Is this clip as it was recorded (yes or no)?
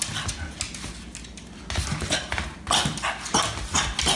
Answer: yes